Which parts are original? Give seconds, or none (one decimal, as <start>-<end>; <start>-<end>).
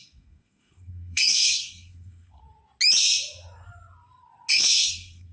2.4-4.5